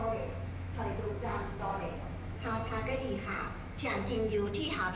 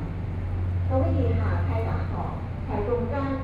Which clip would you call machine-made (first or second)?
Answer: first